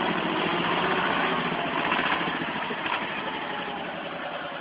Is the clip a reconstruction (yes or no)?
no